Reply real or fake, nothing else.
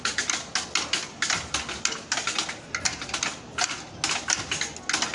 real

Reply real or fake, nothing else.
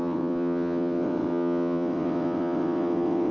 fake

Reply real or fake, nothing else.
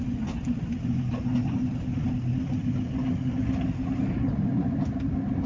real